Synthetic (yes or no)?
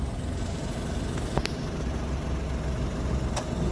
no